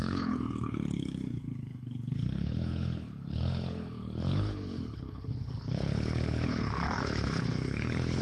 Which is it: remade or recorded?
remade